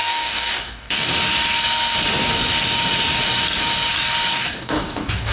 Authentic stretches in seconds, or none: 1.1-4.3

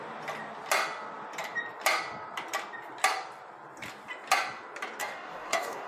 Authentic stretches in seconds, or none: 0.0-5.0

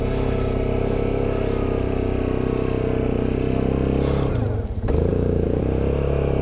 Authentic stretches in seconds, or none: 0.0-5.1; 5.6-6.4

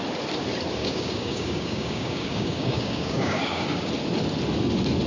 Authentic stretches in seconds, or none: 0.0-0.8; 3.9-5.1

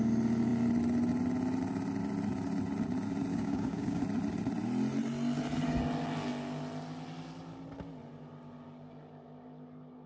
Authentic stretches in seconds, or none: 0.0-3.3; 4.0-10.1

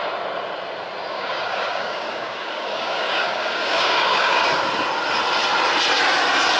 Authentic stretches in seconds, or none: 0.0-1.1; 4.4-6.6